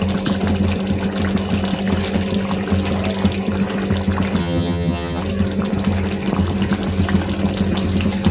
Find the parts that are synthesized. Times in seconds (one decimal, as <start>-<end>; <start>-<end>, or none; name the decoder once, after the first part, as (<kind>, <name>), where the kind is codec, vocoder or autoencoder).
4.4-5.2 (vocoder, HiFi-GAN)